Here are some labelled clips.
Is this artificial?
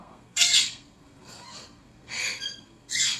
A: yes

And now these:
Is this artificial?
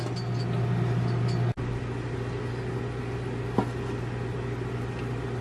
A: no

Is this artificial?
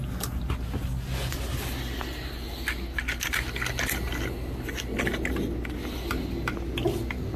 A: no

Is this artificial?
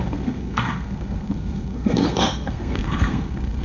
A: yes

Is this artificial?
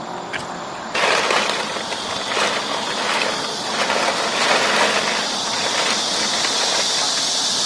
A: no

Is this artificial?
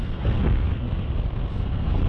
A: yes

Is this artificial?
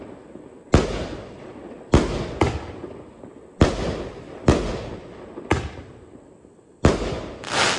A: no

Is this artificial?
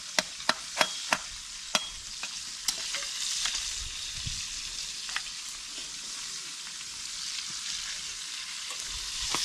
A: no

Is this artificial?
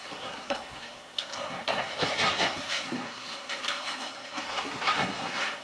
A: yes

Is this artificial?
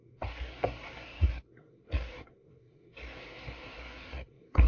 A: yes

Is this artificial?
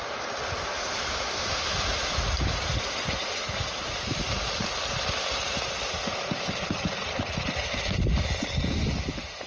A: no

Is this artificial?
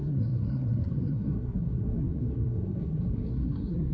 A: yes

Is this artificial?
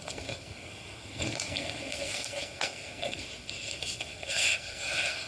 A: yes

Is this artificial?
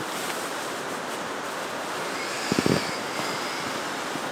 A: no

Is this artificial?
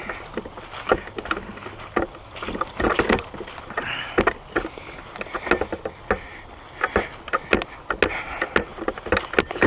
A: no